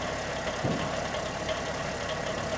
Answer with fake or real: real